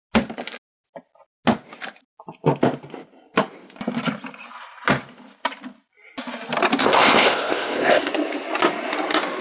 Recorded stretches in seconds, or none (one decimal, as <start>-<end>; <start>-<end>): 0.0-6.8; 8.1-9.4